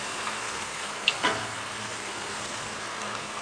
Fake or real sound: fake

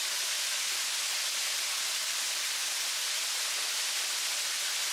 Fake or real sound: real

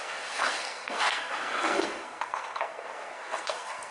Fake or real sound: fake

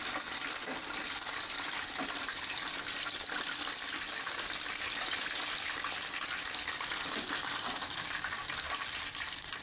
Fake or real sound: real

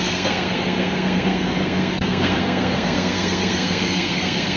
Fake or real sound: fake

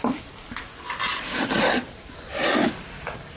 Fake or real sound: real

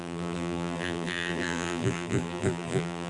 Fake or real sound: fake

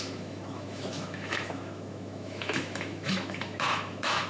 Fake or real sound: fake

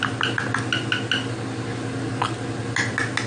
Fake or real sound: real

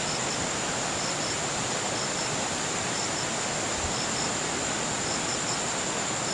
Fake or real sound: real